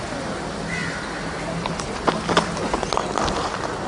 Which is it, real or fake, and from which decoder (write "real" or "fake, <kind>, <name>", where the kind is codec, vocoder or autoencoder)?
real